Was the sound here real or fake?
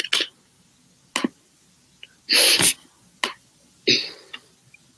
real